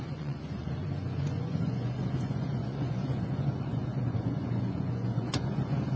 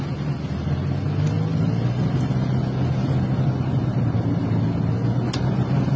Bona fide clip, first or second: second